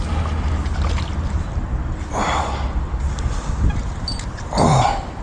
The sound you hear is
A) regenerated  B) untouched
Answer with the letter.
B